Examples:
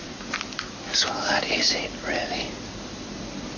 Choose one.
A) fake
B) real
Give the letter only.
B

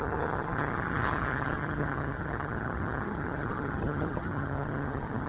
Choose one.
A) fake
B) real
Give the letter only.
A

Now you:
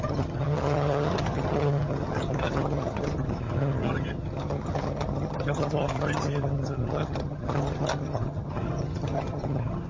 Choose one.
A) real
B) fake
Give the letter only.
B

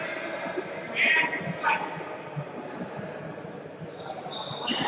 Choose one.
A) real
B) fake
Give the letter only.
A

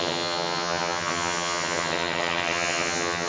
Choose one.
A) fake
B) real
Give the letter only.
A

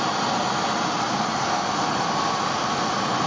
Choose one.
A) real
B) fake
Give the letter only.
A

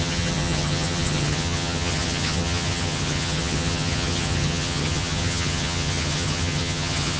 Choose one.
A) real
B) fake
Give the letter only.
B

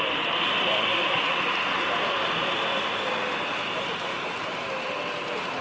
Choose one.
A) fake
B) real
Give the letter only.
B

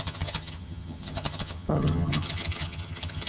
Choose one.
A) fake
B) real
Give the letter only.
A